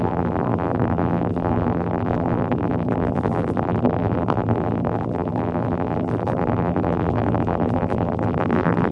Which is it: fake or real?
fake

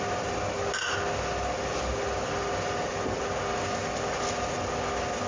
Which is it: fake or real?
real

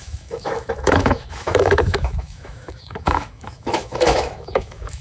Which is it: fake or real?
fake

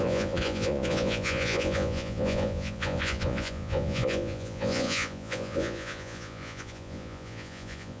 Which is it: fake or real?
fake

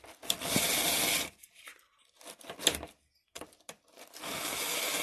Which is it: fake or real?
real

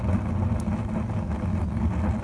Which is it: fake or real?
real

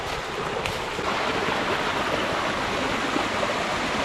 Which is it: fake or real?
real